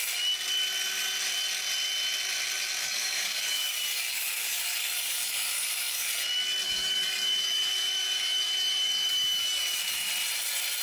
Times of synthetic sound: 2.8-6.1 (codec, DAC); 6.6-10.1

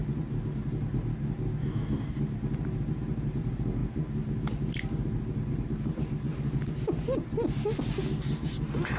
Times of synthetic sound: 1.6-2.2 (codec, DAC)

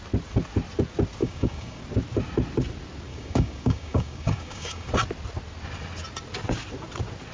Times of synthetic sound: 1.2-1.8 (codec, DAC); 3.1-4.9